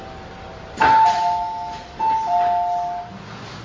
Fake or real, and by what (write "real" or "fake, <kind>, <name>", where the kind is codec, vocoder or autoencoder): real